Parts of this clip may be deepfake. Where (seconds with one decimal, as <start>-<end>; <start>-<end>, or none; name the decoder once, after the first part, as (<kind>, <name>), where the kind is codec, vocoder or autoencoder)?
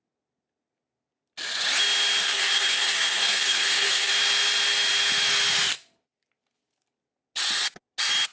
2.2-4.1 (codec, SNAC)